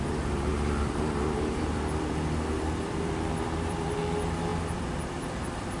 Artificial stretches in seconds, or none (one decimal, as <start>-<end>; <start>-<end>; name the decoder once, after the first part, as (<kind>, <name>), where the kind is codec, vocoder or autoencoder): 0.5-4.0 (vocoder, BigVGAN v2)